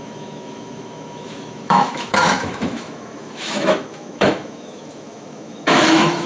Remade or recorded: remade